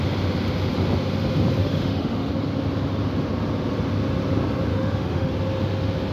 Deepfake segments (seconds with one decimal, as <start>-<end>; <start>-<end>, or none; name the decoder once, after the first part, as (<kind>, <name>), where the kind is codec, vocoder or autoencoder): 1.6-2.3 (autoencoder, DAC-VAE); 4.7-5.3